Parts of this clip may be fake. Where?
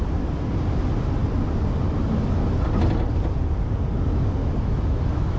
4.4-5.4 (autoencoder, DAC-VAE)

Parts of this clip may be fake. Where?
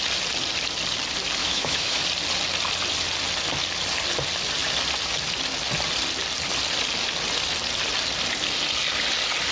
1.4-2.0 (autoencoder, DAC-VAE)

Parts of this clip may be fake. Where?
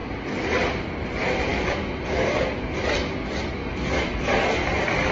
1.5-2.3 (autoencoder, DAC-VAE); 3.6-4.2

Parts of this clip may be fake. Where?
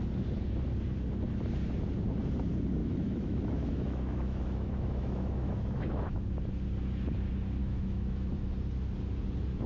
2.8-6.3 (autoencoder, DAC-VAE); 7.6-8.3